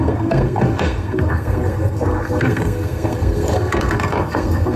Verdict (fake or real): fake